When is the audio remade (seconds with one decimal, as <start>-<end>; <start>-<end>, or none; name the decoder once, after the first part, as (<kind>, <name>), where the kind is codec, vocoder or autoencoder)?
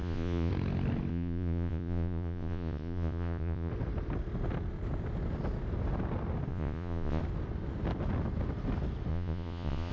0.0-0.5 (vocoder, Vocos); 1.1-3.7; 6.5-7.2; 9.1-9.9